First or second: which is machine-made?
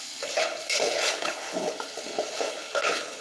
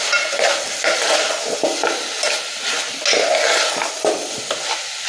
first